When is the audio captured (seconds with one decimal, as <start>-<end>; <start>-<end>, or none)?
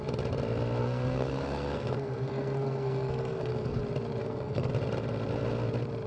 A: 0.0-0.8; 3.8-4.2; 4.7-6.1